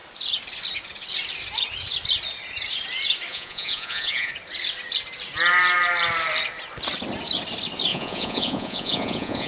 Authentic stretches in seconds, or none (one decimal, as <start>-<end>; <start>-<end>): 0.0-3.3; 4.3-7.9